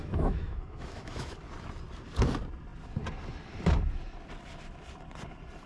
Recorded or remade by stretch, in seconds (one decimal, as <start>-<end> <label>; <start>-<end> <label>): 0.0-1.4 remade; 1.4-5.7 recorded

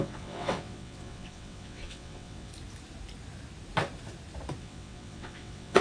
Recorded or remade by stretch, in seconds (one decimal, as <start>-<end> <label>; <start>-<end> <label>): 0.0-2.5 remade; 2.5-4.6 recorded; 4.6-5.8 remade